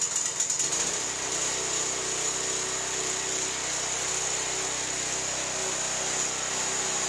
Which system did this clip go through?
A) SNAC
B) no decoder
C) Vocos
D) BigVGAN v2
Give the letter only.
B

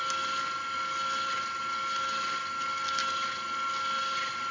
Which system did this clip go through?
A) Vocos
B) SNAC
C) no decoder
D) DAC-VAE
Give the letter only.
C